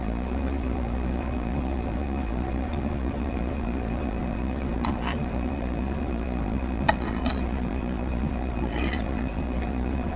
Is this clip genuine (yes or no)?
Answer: no